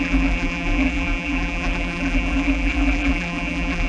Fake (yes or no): yes